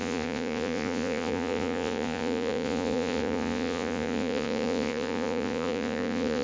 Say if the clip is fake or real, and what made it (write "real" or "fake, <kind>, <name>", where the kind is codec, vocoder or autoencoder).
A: fake, vocoder, Vocos